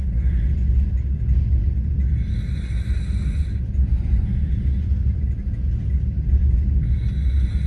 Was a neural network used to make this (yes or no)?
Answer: no